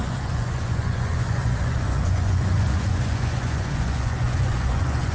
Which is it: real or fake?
fake